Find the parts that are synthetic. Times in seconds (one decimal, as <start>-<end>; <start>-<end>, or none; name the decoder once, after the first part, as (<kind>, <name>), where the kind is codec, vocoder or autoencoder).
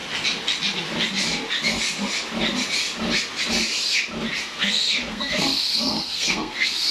4.4-6.9 (codec, SNAC)